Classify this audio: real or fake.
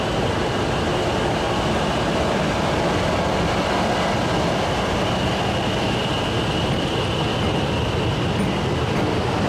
real